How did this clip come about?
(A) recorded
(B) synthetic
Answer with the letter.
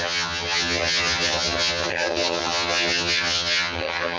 B